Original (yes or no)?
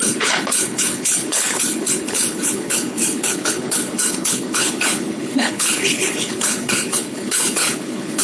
no